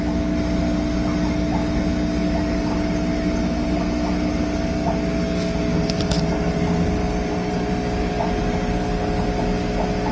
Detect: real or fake real